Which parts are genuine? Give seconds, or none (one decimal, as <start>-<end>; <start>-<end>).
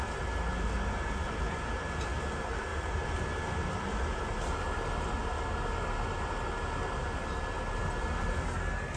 0.0-9.0